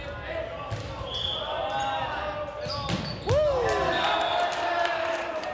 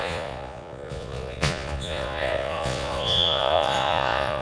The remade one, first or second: second